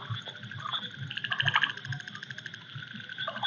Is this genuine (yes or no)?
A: yes